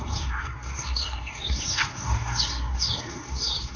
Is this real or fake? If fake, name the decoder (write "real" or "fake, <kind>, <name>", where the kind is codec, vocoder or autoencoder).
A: fake, codec, SNAC